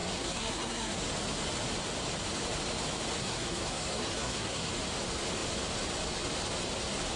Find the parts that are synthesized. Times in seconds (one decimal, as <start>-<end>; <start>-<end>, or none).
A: 0.0-1.0; 3.2-4.7